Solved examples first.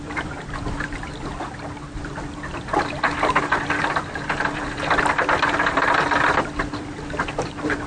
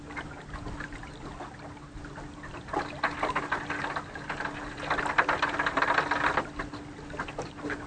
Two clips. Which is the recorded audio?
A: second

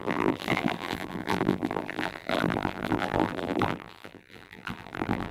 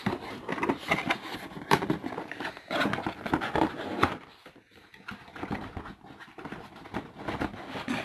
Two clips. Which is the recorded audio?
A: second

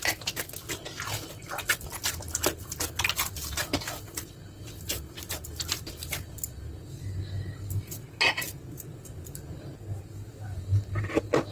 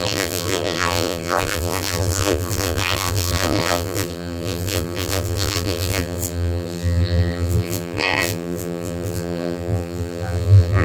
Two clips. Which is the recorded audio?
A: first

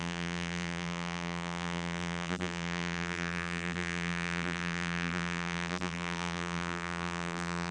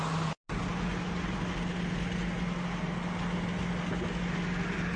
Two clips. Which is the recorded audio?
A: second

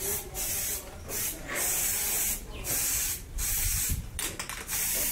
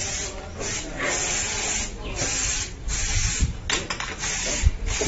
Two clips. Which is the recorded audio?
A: second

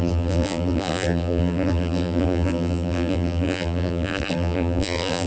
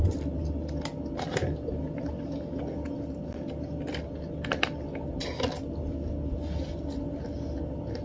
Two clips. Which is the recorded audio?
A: second